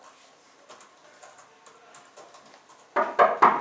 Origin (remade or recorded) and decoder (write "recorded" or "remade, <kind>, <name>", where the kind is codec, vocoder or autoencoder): recorded